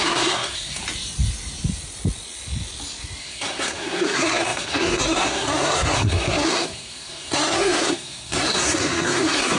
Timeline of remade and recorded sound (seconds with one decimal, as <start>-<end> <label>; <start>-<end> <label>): 0.0-0.8 remade; 0.8-3.2 recorded; 3.2-9.6 remade